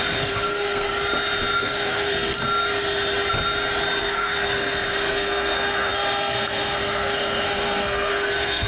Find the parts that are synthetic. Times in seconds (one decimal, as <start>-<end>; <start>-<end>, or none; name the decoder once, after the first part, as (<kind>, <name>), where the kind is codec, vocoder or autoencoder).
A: 0.0-0.9 (codec, SNAC); 1.6-2.4; 4.0-8.7